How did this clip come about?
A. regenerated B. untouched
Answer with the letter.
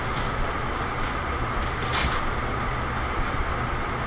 B